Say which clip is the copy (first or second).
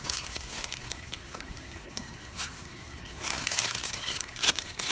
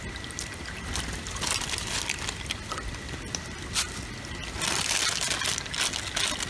first